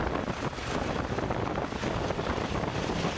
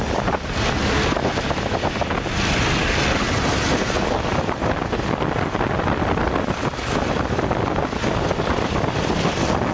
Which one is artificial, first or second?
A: first